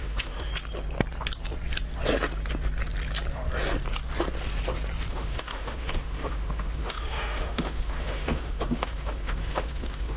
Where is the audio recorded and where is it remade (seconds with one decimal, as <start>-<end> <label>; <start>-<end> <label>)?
0.0-0.5 remade; 0.5-5.1 recorded; 5.1-10.2 remade

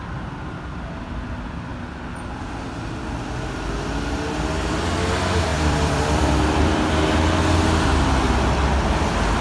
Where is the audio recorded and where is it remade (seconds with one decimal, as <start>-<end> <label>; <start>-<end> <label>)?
0.0-5.5 recorded; 5.5-6.9 remade; 6.9-9.4 recorded

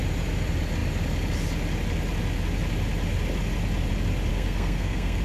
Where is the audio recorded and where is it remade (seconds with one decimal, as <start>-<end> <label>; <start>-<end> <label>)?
0.0-4.3 recorded; 4.3-5.2 remade